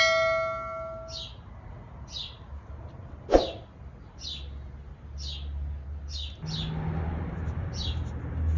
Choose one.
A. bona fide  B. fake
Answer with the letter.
A